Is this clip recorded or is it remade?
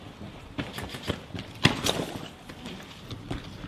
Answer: recorded